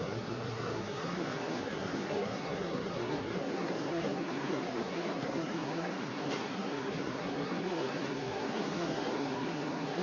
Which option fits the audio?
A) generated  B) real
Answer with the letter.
A